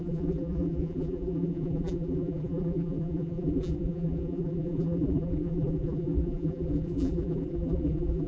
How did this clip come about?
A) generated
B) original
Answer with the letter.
A